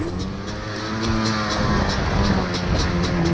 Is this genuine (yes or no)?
yes